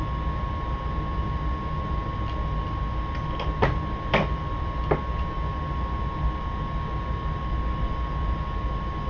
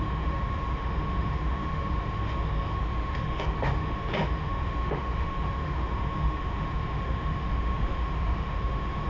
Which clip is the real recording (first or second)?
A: first